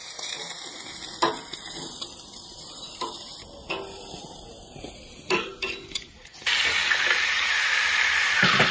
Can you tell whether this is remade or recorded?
recorded